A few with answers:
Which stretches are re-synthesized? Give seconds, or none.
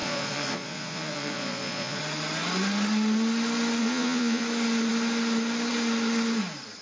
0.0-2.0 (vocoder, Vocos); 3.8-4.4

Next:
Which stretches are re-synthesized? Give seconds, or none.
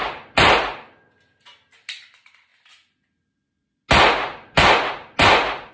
none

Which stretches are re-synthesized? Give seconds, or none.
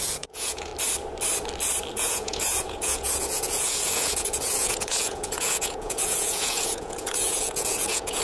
0.0-0.7 (vocoder, Vocos); 1.9-8.2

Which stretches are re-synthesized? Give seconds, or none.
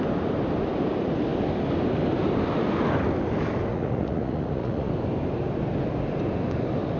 3.7-4.9 (vocoder, Vocos)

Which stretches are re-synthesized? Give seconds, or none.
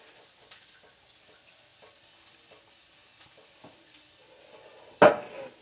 none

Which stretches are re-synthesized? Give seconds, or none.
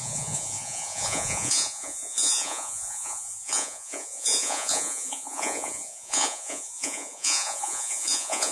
0.0-8.5 (vocoder, Vocos)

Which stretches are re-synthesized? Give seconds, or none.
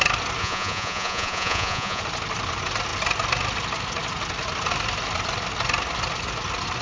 0.4-2.0 (vocoder, Vocos)